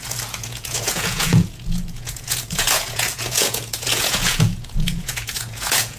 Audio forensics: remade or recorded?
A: remade